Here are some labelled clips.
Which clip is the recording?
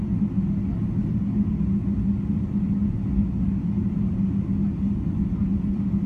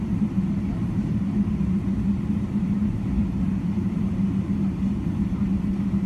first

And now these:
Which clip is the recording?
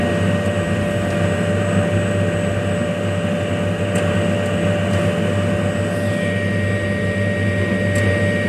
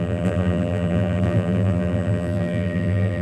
first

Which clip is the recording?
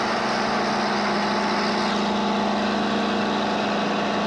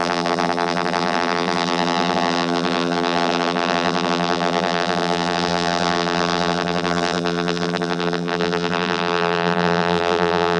first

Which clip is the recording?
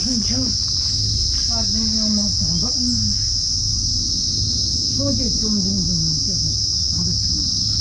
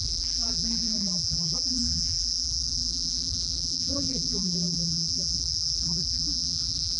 first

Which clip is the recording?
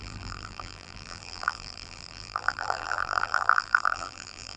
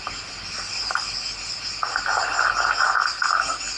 second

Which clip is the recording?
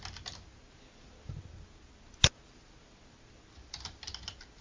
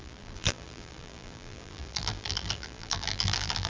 first